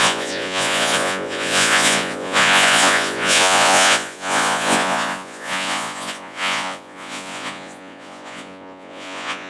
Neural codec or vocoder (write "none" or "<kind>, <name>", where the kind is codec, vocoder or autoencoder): vocoder, Vocos